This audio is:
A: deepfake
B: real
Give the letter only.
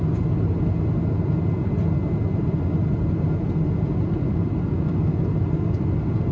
B